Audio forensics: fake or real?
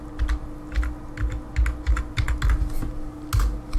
real